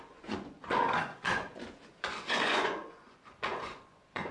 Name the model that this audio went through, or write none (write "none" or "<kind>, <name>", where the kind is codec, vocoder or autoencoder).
vocoder, Vocos